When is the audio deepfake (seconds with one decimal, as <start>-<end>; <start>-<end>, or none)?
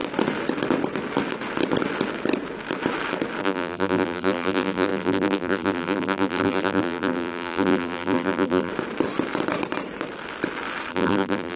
3.4-8.7; 10.9-11.6